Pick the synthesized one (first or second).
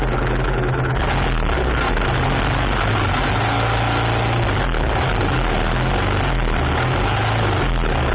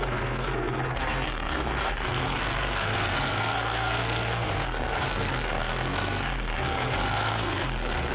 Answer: second